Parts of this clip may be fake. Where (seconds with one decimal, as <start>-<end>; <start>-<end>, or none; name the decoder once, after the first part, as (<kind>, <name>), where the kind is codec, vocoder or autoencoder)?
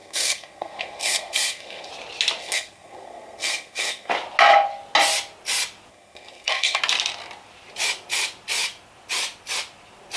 0.0-1.9 (codec, SNAC); 2.4-4.1; 5.9-6.8